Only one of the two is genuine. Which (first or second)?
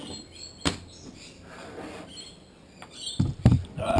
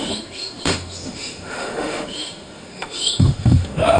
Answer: first